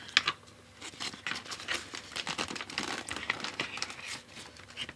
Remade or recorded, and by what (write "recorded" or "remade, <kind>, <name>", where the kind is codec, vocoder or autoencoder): recorded